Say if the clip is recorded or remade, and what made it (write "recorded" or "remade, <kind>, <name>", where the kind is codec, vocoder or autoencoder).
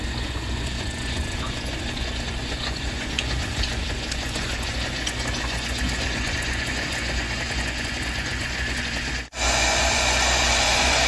remade, vocoder, Vocos